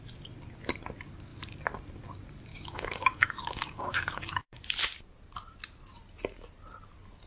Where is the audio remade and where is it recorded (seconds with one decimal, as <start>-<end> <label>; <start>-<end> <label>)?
0.0-2.5 recorded; 2.5-4.6 remade; 4.6-7.3 recorded